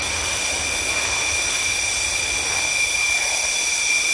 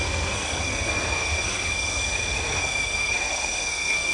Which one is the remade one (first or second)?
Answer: second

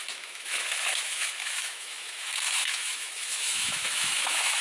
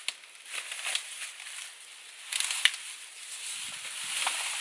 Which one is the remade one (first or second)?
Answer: first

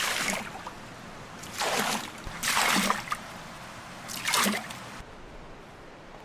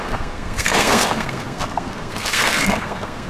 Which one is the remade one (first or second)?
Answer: second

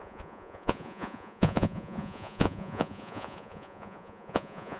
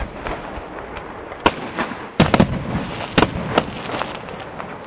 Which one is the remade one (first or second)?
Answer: first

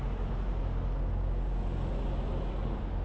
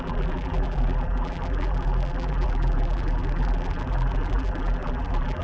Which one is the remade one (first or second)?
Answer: second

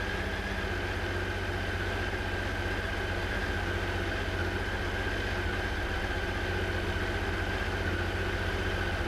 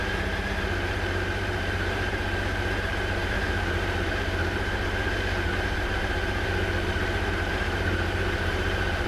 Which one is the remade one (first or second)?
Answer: second